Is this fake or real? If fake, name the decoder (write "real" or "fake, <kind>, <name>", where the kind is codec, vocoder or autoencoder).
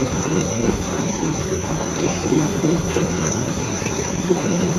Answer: fake, codec, SNAC